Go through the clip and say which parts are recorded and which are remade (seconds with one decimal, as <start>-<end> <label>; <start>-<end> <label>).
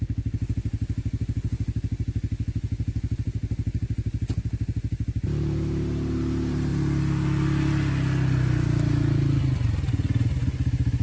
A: 0.0-11.0 recorded